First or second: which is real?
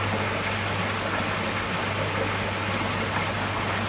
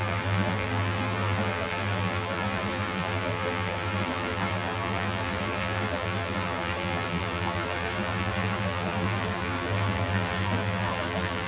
first